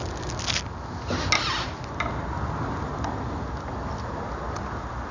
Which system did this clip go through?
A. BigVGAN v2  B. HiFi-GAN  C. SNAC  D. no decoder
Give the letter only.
D